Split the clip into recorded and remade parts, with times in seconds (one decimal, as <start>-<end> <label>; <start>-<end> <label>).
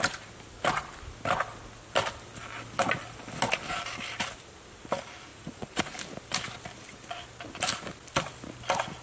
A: 0.0-5.3 recorded; 5.3-5.8 remade; 5.8-9.0 recorded